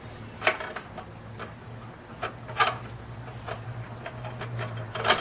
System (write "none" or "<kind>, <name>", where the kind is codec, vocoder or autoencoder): none